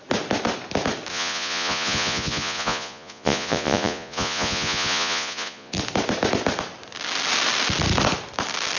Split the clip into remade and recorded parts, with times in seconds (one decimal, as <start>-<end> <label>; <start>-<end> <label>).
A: 0.0-1.1 recorded; 1.1-5.7 remade; 5.7-8.8 recorded